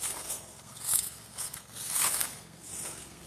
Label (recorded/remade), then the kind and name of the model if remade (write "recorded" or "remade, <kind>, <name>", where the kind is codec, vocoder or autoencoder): remade, codec, SNAC